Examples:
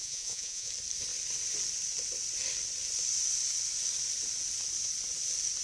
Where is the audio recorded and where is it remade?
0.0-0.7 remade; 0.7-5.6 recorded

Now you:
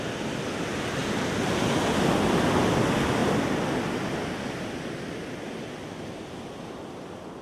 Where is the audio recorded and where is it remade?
0.0-7.4 recorded

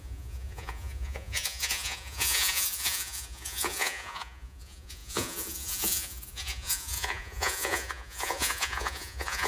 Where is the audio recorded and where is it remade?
0.0-9.5 remade

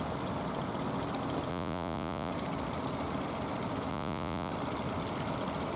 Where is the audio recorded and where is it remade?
0.0-1.5 recorded; 1.5-2.3 remade; 2.3-3.9 recorded; 3.9-4.5 remade; 4.5-5.8 recorded

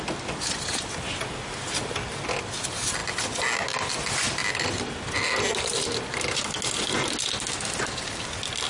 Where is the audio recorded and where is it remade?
0.0-8.7 recorded

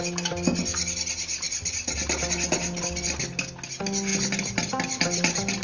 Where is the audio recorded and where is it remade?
0.0-5.6 recorded

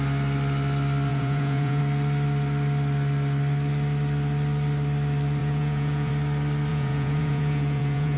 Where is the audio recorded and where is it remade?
0.0-1.1 recorded; 1.1-1.8 remade; 1.8-5.4 recorded; 5.4-6.1 remade; 6.1-6.7 recorded; 6.7-8.2 remade